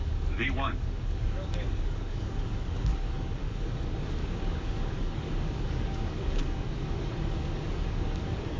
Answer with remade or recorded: remade